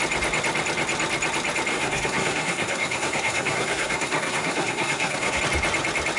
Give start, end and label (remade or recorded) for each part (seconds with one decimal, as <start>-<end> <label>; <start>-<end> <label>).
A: 0.0-1.7 recorded; 1.7-5.4 remade; 5.4-6.2 recorded